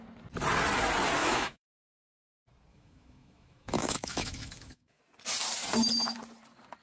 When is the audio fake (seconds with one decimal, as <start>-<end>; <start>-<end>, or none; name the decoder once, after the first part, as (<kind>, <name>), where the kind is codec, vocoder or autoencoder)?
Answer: 1.2-2.3 (autoencoder, DAC-VAE); 2.7-5.0

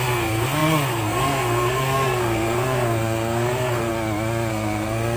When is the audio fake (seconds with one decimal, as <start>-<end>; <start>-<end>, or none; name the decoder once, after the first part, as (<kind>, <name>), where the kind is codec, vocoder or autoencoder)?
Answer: 0.0-3.9 (codec, SNAC); 4.5-5.2

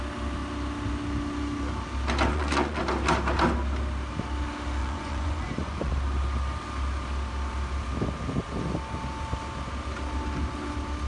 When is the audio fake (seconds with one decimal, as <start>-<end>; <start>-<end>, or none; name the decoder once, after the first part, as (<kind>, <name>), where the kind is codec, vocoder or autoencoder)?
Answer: 2.3-2.8 (vocoder, Vocos); 4.8-5.9